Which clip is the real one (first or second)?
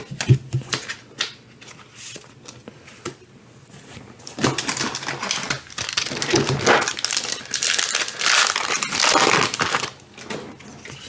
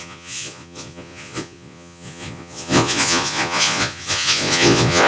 first